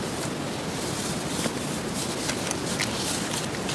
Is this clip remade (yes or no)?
no